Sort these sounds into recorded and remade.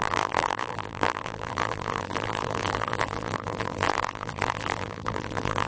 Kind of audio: remade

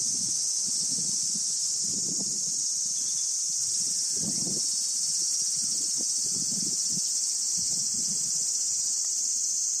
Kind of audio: remade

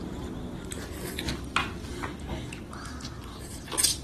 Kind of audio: recorded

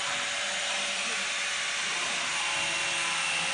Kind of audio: recorded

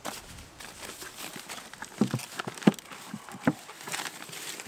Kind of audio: recorded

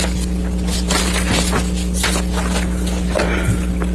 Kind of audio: recorded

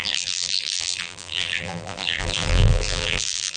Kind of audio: remade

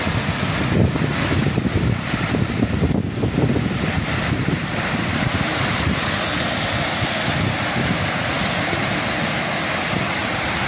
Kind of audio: remade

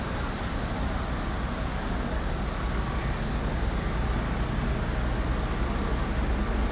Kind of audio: recorded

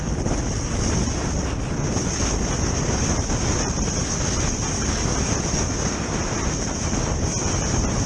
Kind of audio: recorded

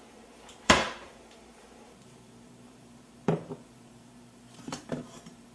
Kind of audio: remade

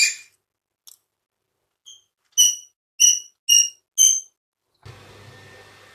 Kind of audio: recorded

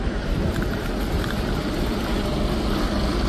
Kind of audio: recorded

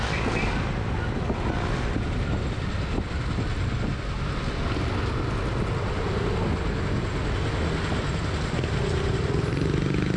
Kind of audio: recorded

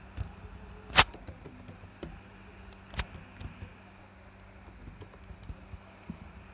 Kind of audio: recorded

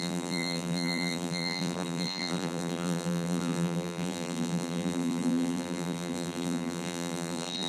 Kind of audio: remade